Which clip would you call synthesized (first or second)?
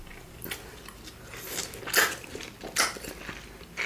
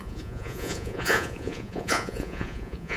second